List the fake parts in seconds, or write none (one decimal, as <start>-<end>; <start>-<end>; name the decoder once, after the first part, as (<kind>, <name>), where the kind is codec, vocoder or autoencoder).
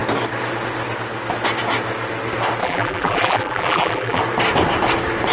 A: 2.6-4.2 (vocoder, BigVGAN v2)